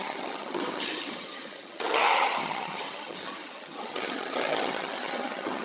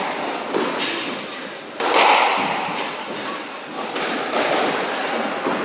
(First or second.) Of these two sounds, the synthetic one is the first